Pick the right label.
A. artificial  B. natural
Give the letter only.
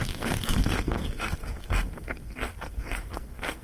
A